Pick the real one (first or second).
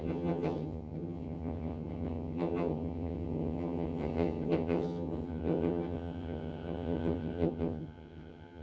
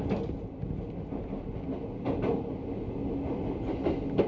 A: second